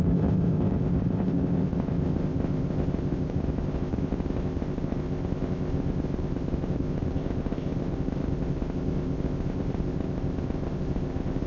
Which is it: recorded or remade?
remade